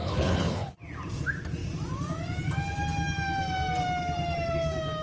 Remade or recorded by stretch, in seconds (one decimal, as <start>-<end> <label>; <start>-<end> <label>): 0.0-0.7 remade; 0.7-5.0 recorded